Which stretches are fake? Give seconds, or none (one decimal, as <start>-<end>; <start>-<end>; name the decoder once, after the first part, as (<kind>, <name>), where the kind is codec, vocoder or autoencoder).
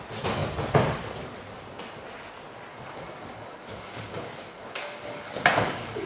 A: 2.7-6.1 (codec, DAC)